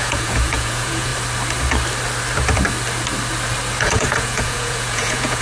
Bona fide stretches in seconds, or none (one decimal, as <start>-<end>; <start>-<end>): 1.1-3.8